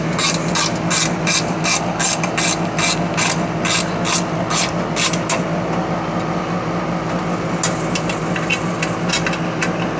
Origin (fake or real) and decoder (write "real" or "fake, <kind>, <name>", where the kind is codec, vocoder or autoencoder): real